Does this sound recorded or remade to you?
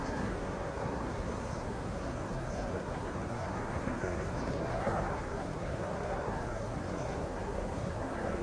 remade